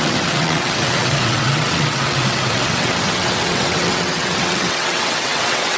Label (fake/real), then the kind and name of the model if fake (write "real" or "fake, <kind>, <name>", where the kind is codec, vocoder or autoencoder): fake, vocoder, WaveNeXt